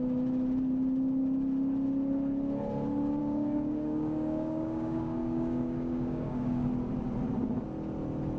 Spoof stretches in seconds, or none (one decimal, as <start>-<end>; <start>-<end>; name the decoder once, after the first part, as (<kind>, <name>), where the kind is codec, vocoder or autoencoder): 3.2-6.7 (codec, DAC)